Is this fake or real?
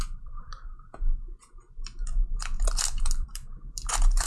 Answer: fake